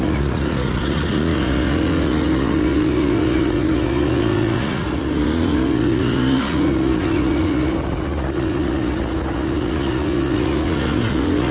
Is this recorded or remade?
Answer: remade